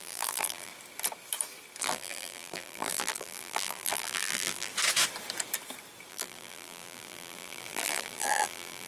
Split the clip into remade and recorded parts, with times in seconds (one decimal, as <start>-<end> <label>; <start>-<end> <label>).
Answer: 0.0-0.7 remade; 0.7-1.8 recorded; 1.8-4.7 remade; 4.7-6.1 recorded; 6.1-8.9 remade